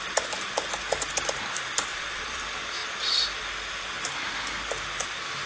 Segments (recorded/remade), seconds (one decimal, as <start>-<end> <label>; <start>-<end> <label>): 0.0-1.9 recorded; 1.9-2.4 remade; 2.4-5.5 recorded